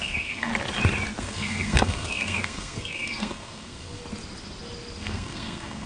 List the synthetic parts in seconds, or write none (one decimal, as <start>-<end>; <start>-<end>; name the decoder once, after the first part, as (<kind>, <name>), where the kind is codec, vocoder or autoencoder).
0.0-0.5 (codec, SNAC); 1.2-4.0; 5.0-5.9